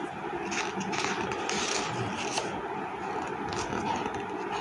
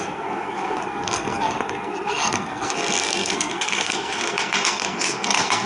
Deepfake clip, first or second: second